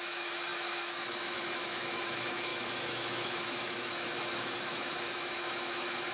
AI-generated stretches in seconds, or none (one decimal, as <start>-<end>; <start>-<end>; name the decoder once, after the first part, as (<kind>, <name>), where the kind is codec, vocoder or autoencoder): 0.0-6.1 (autoencoder, DAC-VAE)